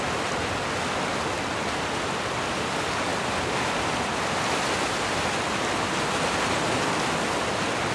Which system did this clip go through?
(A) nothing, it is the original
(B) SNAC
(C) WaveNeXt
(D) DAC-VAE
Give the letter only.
A